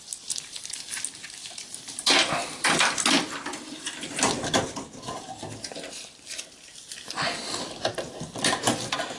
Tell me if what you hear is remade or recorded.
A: recorded